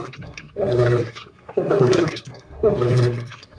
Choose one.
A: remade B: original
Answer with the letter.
A